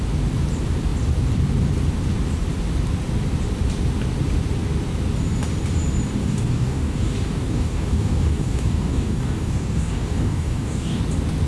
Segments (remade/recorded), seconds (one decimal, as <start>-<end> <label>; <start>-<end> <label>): 0.0-6.2 recorded; 6.2-11.0 remade; 11.0-11.5 recorded

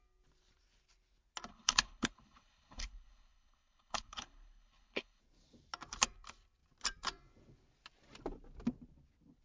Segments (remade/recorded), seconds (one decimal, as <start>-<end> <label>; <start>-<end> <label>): 0.0-1.5 recorded; 1.5-5.2 remade; 5.2-9.4 recorded

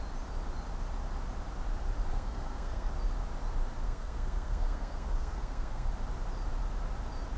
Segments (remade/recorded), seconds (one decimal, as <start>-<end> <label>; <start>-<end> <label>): 0.0-2.1 recorded; 2.1-2.9 remade; 2.9-3.8 recorded; 3.8-5.9 remade; 5.9-7.4 recorded

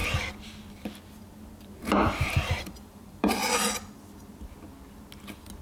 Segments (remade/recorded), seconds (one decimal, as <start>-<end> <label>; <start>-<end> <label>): 0.0-1.8 recorded; 1.8-3.4 remade; 3.4-5.6 recorded

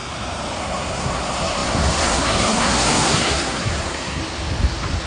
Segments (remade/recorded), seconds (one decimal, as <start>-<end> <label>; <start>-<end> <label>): 0.0-0.6 recorded; 0.6-4.2 remade; 4.2-5.1 recorded

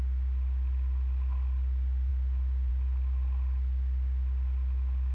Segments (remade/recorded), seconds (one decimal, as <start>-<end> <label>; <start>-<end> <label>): 0.0-5.1 recorded